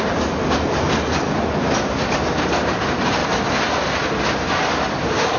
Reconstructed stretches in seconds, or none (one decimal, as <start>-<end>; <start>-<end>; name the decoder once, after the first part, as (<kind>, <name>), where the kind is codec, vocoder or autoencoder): none